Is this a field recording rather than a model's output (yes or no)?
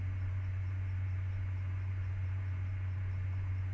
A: no